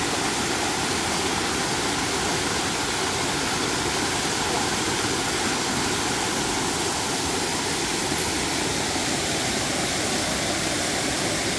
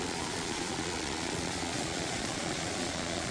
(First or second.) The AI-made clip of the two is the second